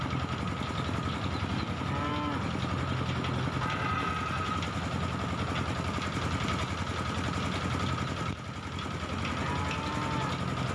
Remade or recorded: recorded